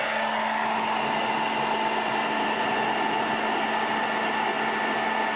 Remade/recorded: recorded